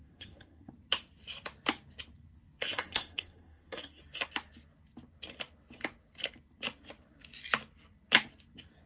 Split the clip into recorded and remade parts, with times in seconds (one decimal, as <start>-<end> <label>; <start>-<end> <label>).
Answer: 0.0-0.7 remade; 0.7-2.6 recorded; 2.6-4.0 remade; 4.0-8.9 recorded